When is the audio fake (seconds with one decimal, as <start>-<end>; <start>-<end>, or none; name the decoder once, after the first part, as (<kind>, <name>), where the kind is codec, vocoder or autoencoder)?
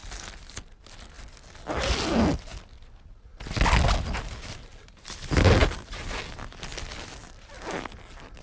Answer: none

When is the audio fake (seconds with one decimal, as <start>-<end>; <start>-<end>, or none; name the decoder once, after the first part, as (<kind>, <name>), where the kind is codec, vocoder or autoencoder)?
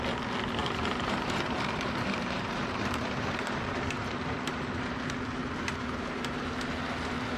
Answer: 0.6-5.0 (vocoder, BigVGAN v2); 5.4-6.7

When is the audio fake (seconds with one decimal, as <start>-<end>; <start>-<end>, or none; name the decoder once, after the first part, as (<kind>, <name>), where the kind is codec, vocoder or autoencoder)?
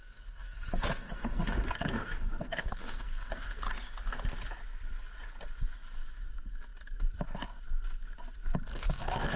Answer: 0.0-3.6 (codec, SNAC); 8.7-9.4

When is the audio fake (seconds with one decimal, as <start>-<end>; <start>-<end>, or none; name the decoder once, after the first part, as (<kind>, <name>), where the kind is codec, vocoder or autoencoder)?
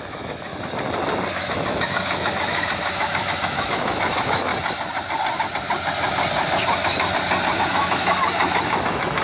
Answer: 0.0-0.5 (autoencoder, DAC-VAE); 1.3-4.5; 7.6-9.2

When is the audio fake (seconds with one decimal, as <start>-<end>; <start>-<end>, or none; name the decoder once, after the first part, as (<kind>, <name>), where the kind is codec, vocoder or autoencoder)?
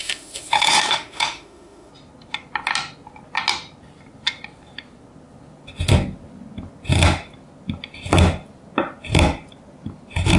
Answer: 0.0-1.9 (autoencoder, DAC-VAE)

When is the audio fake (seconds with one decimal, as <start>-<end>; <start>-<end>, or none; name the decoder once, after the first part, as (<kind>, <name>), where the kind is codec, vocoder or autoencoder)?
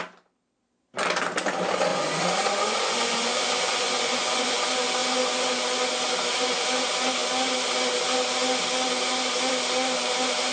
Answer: 1.9-4.6 (vocoder, Vocos)